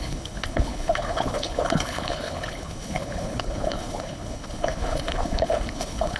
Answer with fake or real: fake